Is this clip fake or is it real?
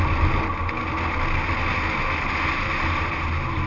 real